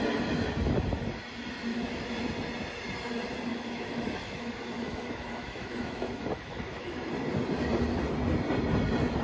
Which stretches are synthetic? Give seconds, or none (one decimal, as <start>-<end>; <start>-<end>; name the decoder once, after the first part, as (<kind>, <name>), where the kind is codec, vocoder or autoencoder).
1.7-2.2 (autoencoder, DAC-VAE); 3.5-7.1

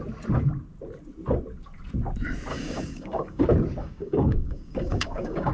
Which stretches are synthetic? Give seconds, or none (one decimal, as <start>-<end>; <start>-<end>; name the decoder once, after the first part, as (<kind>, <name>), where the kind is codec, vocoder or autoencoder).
2.5-3.4 (codec, DAC); 3.8-5.5

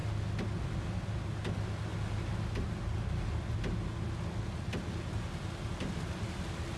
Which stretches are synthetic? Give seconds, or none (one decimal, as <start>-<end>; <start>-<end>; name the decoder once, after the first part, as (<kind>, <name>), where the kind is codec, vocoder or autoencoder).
none

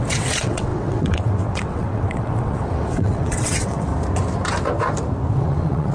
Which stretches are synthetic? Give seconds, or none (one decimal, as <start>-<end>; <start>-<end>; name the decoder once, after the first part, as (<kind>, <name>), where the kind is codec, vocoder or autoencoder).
0.0-3.9 (vocoder, WaveNeXt); 5.3-5.9

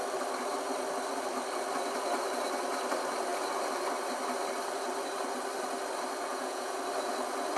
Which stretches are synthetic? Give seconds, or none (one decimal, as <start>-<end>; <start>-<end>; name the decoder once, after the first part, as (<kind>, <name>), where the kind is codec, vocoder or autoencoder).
6.3-6.8 (vocoder, Vocos)

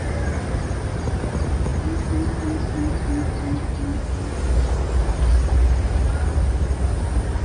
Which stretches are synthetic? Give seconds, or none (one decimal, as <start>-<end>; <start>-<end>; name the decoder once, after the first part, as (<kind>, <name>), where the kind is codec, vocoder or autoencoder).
none

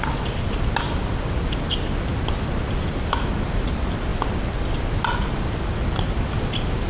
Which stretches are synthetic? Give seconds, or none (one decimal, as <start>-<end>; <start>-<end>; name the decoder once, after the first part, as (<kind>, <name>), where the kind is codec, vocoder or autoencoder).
none